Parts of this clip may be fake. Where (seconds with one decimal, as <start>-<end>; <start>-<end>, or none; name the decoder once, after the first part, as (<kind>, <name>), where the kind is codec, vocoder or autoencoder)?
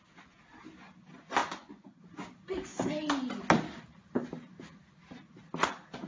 1.4-2.0 (vocoder, Vocos)